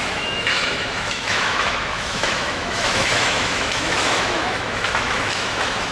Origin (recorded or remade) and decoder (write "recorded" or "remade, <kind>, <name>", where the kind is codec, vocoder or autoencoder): remade, autoencoder, DAC-VAE